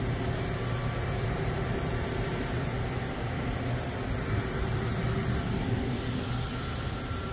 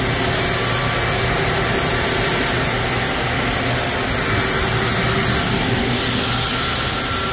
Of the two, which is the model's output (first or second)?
first